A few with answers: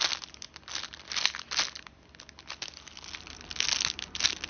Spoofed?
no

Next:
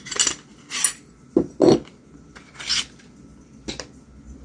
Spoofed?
no